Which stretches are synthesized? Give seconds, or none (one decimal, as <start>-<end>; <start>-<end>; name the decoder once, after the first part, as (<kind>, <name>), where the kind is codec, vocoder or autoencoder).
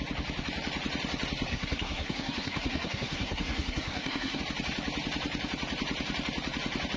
1.5-4.4 (codec, SNAC)